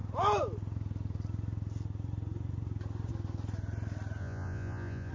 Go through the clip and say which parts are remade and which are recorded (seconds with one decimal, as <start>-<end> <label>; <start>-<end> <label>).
0.0-4.2 recorded; 4.2-5.1 remade